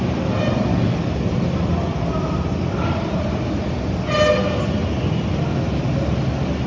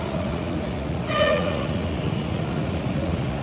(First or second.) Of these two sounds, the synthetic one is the second